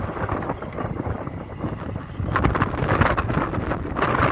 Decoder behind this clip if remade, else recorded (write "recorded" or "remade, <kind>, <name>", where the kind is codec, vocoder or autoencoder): recorded